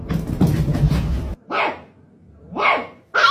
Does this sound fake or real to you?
real